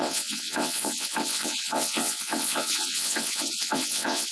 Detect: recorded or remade remade